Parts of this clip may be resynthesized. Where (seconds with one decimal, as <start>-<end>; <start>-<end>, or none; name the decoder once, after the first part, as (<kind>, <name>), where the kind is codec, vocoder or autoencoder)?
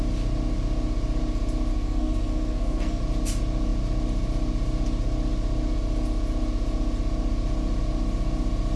1.7-3.0 (codec, SNAC)